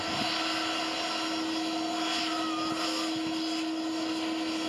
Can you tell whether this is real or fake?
real